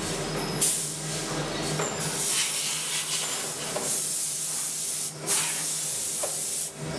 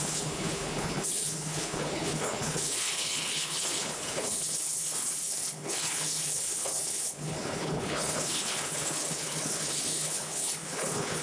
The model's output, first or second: second